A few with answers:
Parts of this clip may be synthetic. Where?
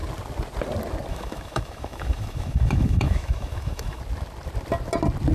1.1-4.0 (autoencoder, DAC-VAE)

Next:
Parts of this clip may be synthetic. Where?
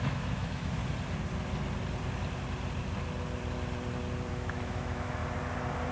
0.0-0.8 (autoencoder, DAC-VAE); 4.3-5.2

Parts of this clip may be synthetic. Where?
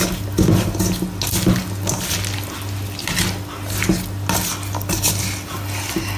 none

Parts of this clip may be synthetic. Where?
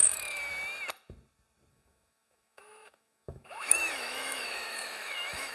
0.0-0.5 (autoencoder, DAC-VAE); 1.7-5.5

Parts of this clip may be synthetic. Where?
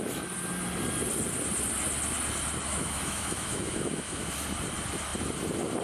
2.7-4.3 (autoencoder, DAC-VAE)